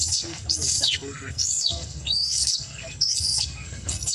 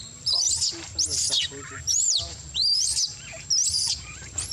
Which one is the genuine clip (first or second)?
second